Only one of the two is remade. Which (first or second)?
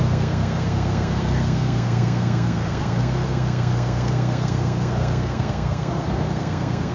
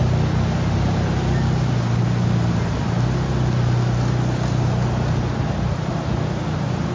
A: first